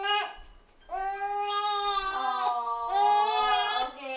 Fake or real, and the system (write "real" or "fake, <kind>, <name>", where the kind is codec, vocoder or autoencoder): real